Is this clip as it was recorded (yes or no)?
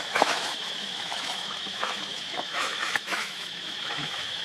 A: no